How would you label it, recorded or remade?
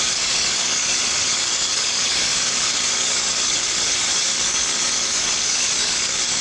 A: remade